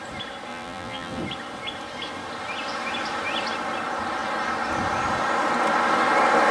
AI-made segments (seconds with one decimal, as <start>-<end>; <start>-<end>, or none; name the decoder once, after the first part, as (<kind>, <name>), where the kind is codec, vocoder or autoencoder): 0.5-1.2 (vocoder, BigVGAN v2)